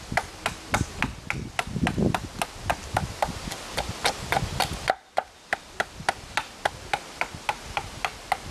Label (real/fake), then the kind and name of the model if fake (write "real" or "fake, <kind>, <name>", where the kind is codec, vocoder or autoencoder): real